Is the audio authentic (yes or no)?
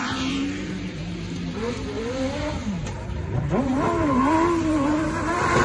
no